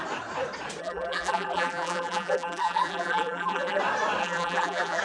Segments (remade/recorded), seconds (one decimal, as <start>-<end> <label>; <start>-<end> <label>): 0.0-0.8 recorded; 0.8-3.8 remade; 3.8-4.2 recorded; 4.2-5.0 remade